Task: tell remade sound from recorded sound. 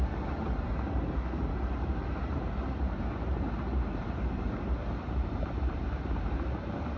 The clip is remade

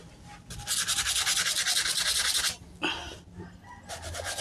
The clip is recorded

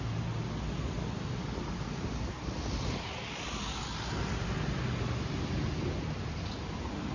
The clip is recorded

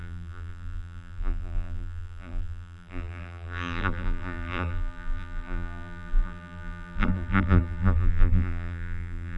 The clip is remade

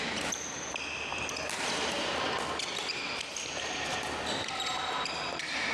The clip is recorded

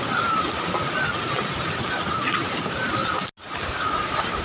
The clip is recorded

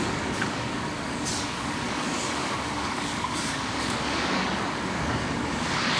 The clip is remade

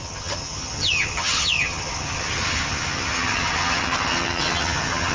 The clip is remade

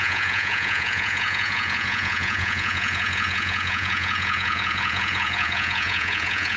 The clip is remade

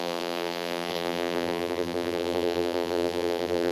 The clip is remade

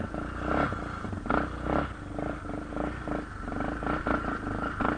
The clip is recorded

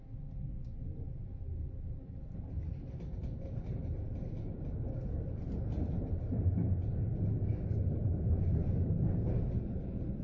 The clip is recorded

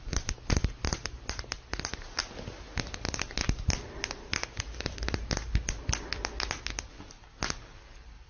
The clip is recorded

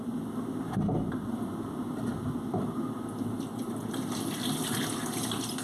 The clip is recorded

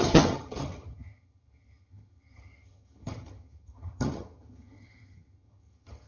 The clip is remade